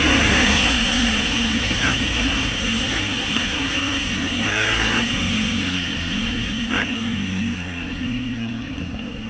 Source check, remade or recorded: remade